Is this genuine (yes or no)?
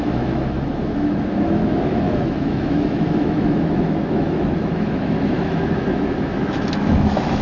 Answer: no